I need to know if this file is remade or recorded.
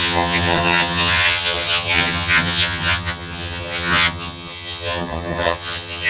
remade